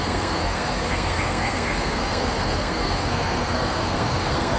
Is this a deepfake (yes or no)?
yes